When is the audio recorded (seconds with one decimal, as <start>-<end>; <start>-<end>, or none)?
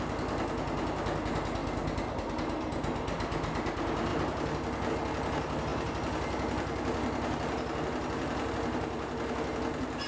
0.0-10.1